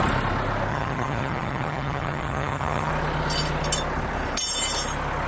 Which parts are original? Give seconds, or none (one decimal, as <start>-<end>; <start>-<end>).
0.0-0.7; 2.9-5.3